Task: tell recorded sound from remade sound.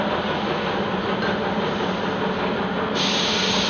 recorded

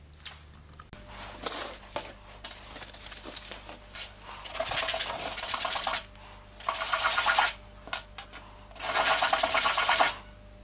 recorded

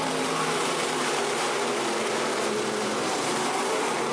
remade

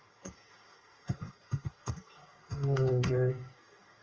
remade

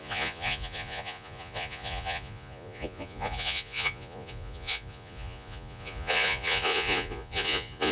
remade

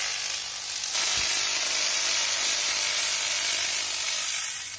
recorded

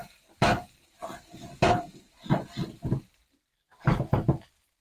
recorded